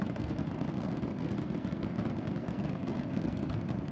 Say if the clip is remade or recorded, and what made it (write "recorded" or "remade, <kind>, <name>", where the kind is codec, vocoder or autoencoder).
remade, codec, SNAC